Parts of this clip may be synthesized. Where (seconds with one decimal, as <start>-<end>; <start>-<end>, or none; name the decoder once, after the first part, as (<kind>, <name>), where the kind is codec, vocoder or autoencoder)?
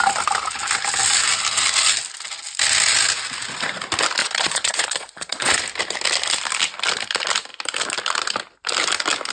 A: 4.2-5.6 (vocoder, Vocos)